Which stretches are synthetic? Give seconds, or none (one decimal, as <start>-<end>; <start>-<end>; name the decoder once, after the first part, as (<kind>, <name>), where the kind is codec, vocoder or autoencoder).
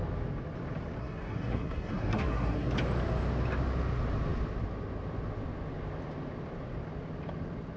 1.0-2.7 (codec, SNAC)